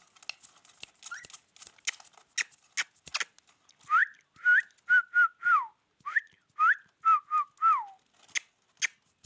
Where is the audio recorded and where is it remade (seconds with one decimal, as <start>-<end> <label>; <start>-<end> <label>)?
0.0-9.3 recorded